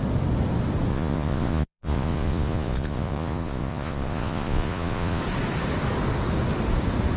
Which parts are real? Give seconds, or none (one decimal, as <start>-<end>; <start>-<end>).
0.0-0.9; 5.2-7.2